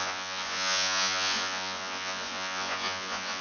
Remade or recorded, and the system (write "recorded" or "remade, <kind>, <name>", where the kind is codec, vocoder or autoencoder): remade, vocoder, Vocos